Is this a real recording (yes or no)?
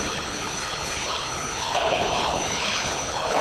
no